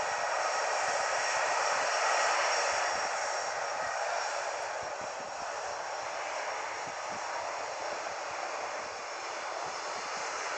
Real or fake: real